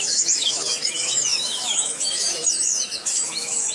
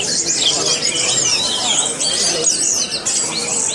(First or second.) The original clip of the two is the second